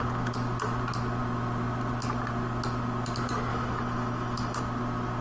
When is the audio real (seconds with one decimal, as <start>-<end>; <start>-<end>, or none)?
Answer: 0.0-3.5; 4.6-5.2

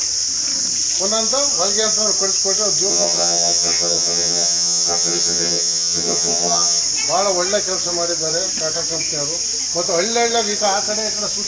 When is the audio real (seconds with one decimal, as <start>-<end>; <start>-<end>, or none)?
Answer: 0.0-2.9; 6.8-11.5

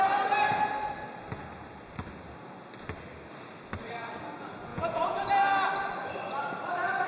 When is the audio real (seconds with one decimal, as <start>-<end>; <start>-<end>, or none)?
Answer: 0.0-4.7; 5.3-7.1